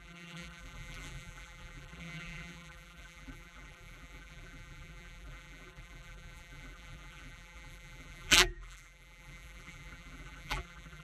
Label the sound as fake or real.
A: fake